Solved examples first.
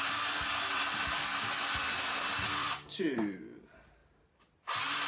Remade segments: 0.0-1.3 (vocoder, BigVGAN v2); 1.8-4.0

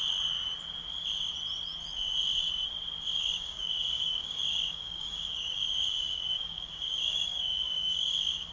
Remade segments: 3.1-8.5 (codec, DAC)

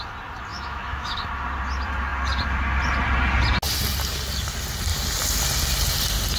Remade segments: 0.5-1.3 (autoencoder, DAC-VAE)

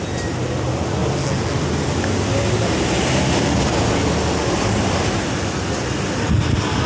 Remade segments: none

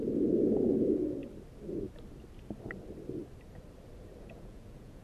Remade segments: 0.0-1.2 (vocoder, Vocos); 4.2-5.0

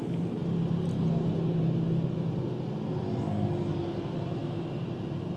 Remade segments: none

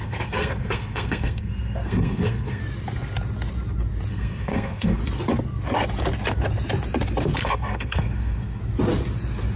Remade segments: 0.0-2.6 (codec, SNAC); 4.1-5.0; 7.4-8.6